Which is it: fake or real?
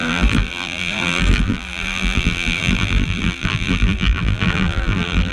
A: fake